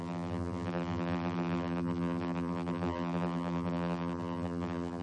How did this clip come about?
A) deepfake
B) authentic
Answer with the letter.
A